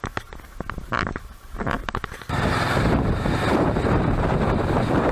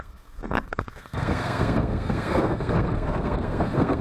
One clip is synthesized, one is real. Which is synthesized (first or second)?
second